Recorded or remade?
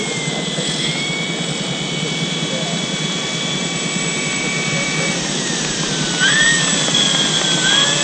remade